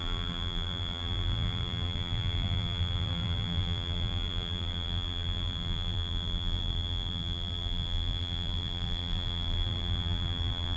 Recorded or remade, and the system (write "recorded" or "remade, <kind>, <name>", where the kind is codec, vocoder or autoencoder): remade, vocoder, BigVGAN v2